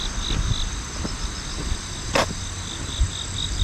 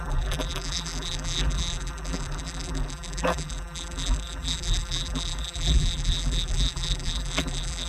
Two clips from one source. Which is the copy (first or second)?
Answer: second